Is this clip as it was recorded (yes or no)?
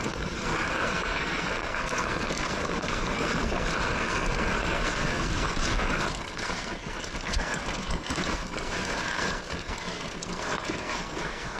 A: no